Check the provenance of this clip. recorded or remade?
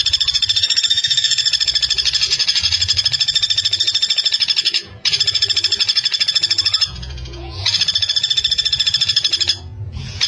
remade